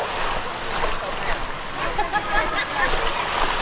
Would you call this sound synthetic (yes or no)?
no